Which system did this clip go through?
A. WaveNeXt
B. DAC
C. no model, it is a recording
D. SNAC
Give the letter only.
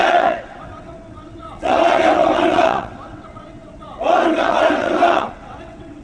A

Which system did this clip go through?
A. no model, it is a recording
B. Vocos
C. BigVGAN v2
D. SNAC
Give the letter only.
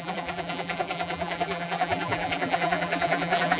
C